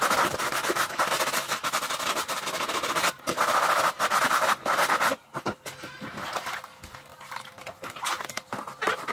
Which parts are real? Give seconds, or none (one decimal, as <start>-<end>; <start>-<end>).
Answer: 0.0-7.1; 8.3-9.1